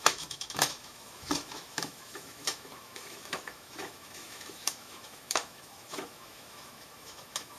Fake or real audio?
fake